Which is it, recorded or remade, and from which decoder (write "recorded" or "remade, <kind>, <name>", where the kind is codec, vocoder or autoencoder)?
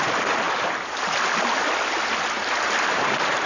remade, vocoder, BigVGAN v2